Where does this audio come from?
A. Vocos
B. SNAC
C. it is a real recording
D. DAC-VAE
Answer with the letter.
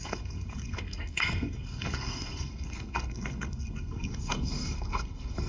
B